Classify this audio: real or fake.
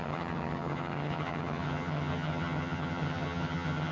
fake